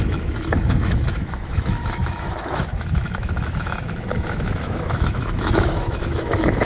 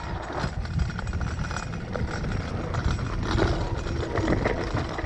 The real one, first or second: second